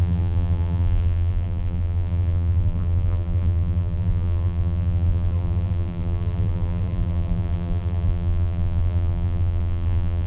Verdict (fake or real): fake